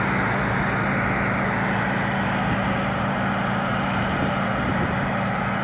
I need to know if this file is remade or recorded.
recorded